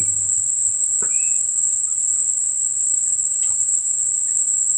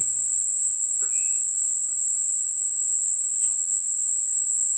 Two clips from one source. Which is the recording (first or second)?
first